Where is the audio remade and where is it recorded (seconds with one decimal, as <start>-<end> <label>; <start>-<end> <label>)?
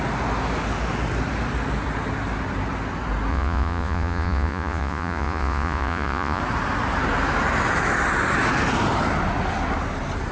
0.0-3.3 recorded; 3.3-6.4 remade; 6.4-10.3 recorded